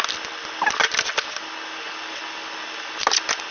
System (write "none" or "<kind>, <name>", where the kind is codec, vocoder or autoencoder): none